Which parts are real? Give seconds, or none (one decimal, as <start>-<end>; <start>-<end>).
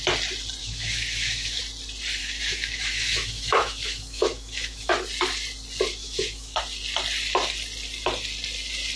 0.0-0.6; 1.6-2.2; 4.9-6.0; 6.6-9.0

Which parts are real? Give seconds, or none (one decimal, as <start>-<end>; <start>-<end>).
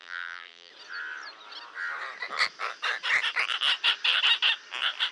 0.7-5.1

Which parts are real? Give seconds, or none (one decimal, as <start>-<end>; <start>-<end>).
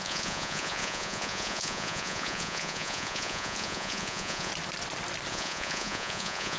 4.5-5.3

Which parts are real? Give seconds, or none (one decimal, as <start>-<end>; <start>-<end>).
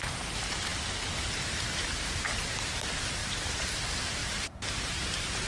3.2-3.7; 4.2-5.0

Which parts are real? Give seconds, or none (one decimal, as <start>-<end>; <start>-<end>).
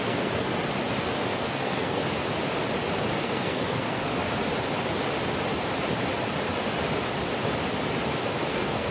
0.5-1.4; 2.0-3.2; 4.1-8.4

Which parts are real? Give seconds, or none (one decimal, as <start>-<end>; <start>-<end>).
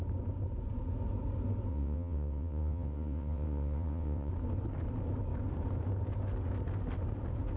0.0-1.7; 4.3-7.6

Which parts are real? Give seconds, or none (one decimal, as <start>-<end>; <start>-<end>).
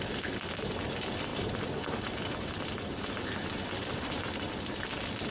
0.0-1.3; 4.5-5.3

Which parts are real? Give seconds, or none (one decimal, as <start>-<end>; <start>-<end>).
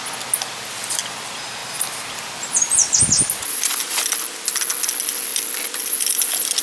0.0-1.6; 3.6-6.6